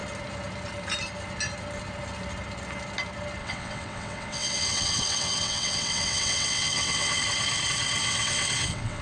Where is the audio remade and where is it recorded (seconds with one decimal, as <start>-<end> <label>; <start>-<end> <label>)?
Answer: 0.0-3.4 recorded; 3.4-7.2 remade; 7.2-8.0 recorded; 8.0-9.0 remade